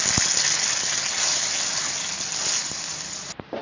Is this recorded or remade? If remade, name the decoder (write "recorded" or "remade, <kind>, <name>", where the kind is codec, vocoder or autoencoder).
recorded